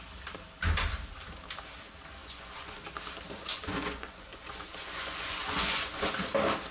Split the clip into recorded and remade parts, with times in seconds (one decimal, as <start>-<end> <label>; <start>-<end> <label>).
0.0-2.2 recorded; 2.2-2.8 remade; 2.8-3.4 recorded; 3.4-6.1 remade; 6.1-6.7 recorded